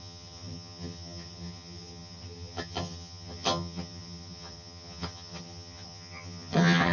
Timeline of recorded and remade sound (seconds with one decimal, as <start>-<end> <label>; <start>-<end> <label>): 0.0-6.9 remade